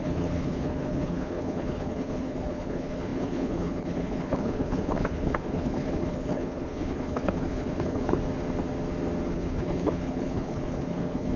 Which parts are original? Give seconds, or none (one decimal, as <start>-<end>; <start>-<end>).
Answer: 8.2-9.3